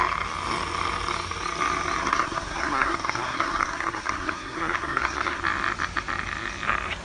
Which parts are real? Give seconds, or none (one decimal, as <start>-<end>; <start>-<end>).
0.0-2.0; 5.4-7.0